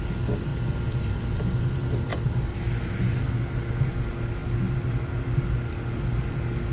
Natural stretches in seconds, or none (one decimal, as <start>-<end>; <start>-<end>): 0.0-6.7